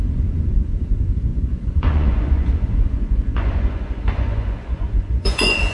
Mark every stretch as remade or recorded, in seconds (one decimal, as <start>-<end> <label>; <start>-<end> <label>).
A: 0.0-5.7 remade

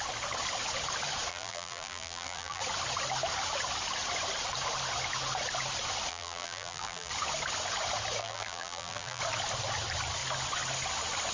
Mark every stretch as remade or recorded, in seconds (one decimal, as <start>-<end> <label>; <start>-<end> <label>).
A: 0.0-1.3 recorded; 1.3-2.6 remade; 2.6-6.1 recorded; 6.1-7.1 remade; 7.1-8.2 recorded; 8.2-9.2 remade; 9.2-11.3 recorded

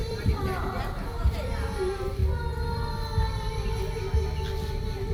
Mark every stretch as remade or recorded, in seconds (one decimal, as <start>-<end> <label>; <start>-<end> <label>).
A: 0.0-2.2 remade; 2.2-5.1 recorded

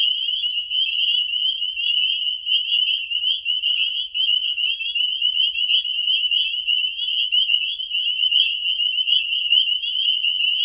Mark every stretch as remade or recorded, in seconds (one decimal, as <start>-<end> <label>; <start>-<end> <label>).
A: 0.0-10.6 recorded

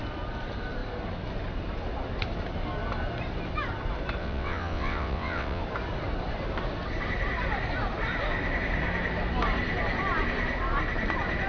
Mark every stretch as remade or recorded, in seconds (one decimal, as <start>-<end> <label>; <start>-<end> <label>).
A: 0.0-4.2 recorded; 4.2-5.6 remade; 5.6-11.5 recorded

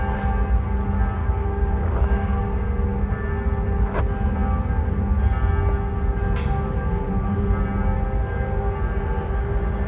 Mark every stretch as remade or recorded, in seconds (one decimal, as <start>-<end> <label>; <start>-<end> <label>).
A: 0.0-1.2 recorded; 1.2-2.4 remade; 2.4-9.9 recorded

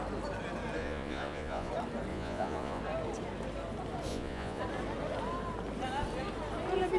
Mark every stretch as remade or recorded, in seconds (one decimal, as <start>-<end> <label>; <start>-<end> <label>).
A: 0.0-0.8 recorded; 0.8-1.7 remade; 1.7-2.1 recorded; 2.1-2.8 remade; 2.8-4.1 recorded; 4.1-4.6 remade; 4.6-7.0 recorded

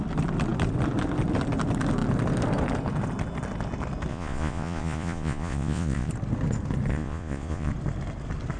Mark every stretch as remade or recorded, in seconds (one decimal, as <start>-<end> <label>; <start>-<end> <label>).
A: 0.0-4.1 recorded; 4.1-6.1 remade; 6.1-6.9 recorded; 6.9-7.7 remade; 7.7-8.6 recorded